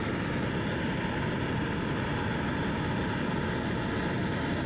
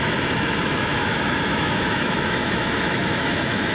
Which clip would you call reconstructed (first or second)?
second